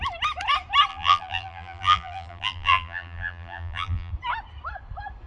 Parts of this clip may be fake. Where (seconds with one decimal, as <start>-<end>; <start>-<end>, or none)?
0.9-4.1